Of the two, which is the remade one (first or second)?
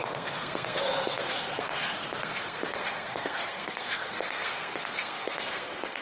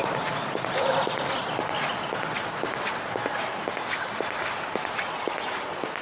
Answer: first